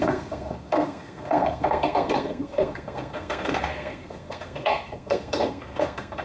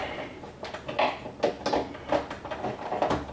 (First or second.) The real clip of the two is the second